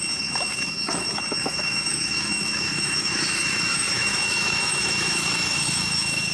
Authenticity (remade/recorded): remade